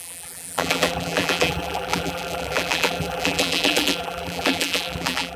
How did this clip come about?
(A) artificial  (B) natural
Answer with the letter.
A